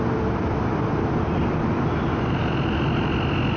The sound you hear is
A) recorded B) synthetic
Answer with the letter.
A